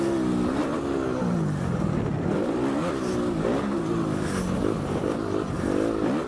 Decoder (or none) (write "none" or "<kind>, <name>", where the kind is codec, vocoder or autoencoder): none